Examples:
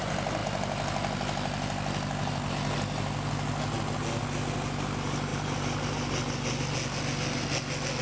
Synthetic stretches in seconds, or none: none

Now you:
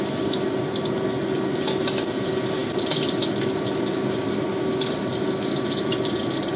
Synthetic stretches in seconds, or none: none

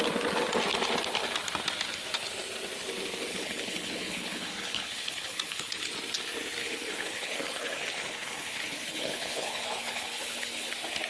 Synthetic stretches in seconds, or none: 3.3-5.9 (codec, HILCodec); 6.6-10.7